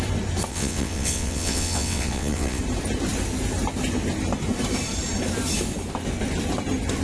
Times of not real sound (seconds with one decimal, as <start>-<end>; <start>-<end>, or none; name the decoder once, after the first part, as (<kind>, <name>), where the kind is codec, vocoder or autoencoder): 0.5-2.6 (vocoder, WaveNeXt)